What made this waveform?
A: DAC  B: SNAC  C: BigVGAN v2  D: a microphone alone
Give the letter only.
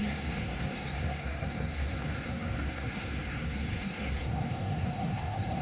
B